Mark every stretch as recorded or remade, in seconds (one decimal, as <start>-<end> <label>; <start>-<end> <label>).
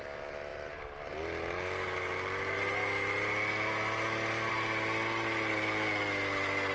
0.0-6.7 recorded